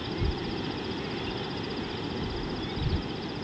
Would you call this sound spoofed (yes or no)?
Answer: no